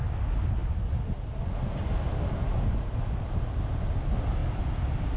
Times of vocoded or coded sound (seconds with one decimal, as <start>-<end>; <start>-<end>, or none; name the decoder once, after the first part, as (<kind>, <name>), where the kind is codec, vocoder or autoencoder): none